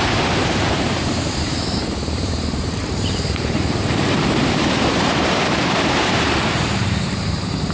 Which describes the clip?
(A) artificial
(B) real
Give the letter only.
A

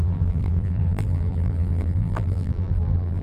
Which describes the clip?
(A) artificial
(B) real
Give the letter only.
A